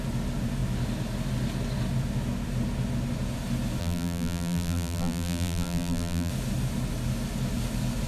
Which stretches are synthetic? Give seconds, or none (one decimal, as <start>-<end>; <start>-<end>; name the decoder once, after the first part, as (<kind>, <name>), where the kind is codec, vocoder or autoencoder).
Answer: 3.8-6.3 (vocoder, BigVGAN v2)